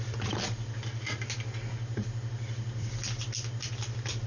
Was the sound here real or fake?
real